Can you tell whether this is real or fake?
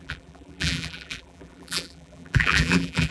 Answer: fake